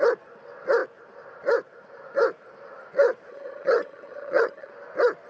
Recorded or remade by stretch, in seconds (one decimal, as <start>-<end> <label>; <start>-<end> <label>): 0.0-3.3 recorded; 3.3-4.7 remade; 4.7-5.3 recorded